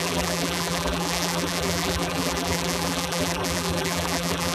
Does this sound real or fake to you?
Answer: fake